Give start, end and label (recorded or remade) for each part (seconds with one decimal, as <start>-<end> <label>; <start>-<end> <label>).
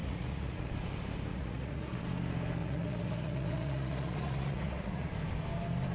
0.0-0.7 remade; 0.7-1.3 recorded; 1.3-2.0 remade; 2.0-2.6 recorded; 2.6-5.1 remade; 5.1-5.9 recorded